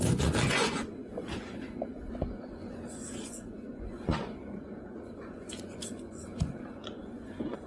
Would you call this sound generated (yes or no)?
yes